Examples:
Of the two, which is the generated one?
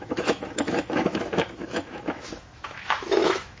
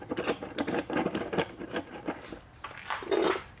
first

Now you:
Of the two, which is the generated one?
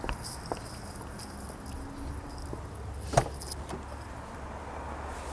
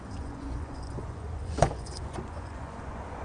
second